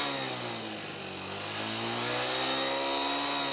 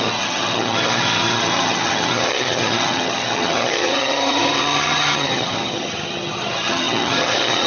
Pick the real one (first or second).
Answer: first